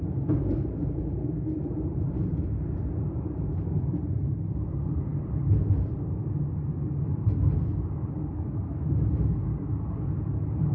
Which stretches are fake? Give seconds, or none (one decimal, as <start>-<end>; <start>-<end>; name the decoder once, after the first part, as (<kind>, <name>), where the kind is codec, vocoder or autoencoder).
0.0-10.7 (vocoder, BigVGAN v2)